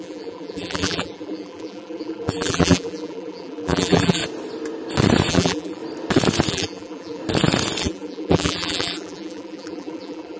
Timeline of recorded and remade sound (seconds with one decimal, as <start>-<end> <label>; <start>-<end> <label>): 0.0-4.2 remade; 4.2-5.3 recorded; 5.3-5.8 remade; 5.8-6.5 recorded; 6.5-7.2 remade; 7.2-7.8 recorded; 7.8-10.4 remade